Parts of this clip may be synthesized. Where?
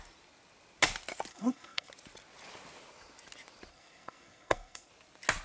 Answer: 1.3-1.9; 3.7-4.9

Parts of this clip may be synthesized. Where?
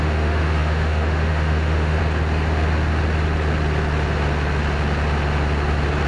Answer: 0.0-2.0